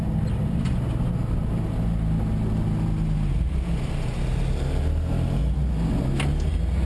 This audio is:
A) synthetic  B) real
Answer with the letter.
B